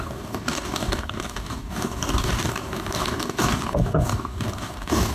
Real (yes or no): no